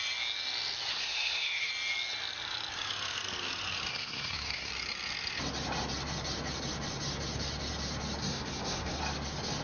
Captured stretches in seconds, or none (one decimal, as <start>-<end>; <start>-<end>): 0.0-0.9; 1.7-3.9; 4.7-8.2; 9.0-9.6